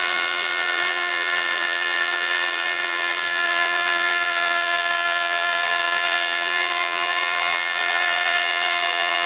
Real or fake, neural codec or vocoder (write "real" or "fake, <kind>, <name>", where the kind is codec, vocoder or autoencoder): fake, vocoder, BigVGAN v2